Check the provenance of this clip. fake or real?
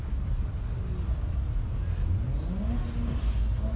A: real